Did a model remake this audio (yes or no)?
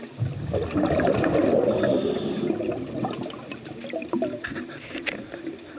no